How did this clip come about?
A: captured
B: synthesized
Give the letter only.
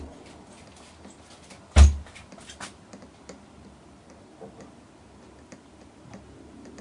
A